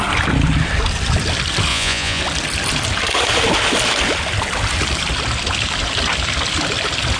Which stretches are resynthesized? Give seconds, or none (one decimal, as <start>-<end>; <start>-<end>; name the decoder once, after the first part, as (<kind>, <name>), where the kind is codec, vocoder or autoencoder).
1.7-2.2 (vocoder, Vocos)